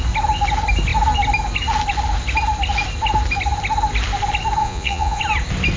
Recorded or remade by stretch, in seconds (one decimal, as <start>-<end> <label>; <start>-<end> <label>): 0.0-4.6 recorded; 4.6-5.2 remade; 5.2-5.8 recorded